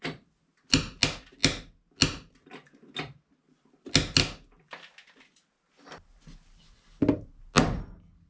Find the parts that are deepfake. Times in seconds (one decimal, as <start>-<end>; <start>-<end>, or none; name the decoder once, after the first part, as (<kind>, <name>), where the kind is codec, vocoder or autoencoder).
none

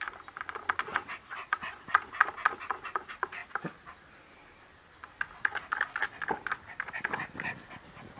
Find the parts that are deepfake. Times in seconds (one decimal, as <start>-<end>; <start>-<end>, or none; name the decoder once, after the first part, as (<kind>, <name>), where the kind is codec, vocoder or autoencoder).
0.9-1.8 (vocoder, WaveNeXt)

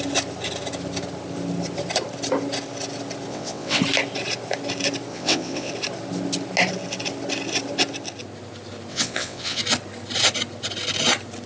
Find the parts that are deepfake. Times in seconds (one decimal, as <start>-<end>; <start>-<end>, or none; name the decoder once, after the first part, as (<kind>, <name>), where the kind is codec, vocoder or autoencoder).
3.3-3.8 (vocoder, WaveNeXt); 5.1-5.7; 8.9-9.6

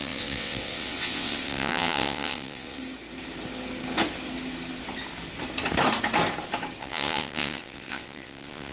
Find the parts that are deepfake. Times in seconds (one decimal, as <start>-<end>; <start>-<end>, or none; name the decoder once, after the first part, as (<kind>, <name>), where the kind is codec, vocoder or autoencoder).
0.0-2.8 (vocoder, WaveNeXt); 6.8-8.7

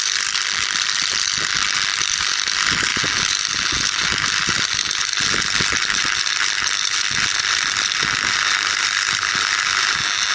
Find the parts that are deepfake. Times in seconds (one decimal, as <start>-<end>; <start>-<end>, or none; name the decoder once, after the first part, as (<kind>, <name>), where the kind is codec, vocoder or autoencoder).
none

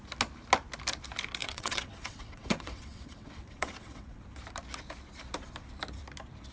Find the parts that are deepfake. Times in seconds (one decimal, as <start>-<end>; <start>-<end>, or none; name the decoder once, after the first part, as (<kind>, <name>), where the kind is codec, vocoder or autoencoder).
1.4-4.2 (vocoder, WaveNeXt)